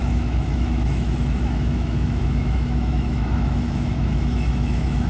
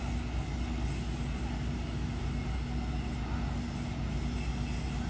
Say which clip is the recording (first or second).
second